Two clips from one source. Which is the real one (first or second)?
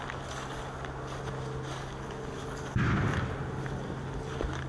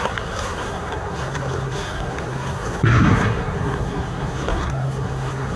first